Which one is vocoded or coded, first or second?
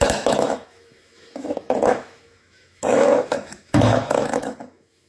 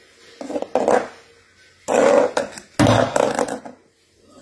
first